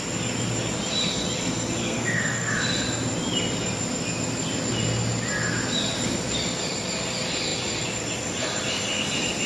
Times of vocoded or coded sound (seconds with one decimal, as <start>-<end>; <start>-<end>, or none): 1.8-2.5